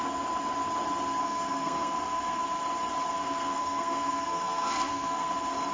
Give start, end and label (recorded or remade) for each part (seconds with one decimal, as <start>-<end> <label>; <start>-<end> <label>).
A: 0.0-1.2 recorded; 1.2-2.4 remade; 2.4-3.1 recorded; 3.1-5.3 remade; 5.3-5.7 recorded